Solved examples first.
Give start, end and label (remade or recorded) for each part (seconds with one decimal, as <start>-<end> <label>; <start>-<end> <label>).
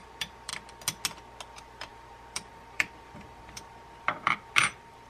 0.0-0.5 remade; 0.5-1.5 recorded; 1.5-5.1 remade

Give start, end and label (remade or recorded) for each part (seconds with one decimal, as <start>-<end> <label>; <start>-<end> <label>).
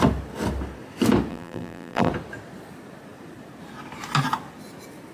0.0-1.3 recorded; 1.3-2.1 remade; 2.1-5.1 recorded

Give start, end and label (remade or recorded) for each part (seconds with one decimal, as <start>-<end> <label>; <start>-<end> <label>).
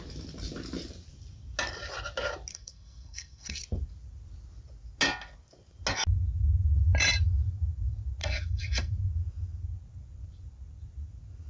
0.0-2.5 recorded; 2.5-3.6 remade; 3.6-8.2 recorded; 8.2-8.9 remade; 8.9-11.5 recorded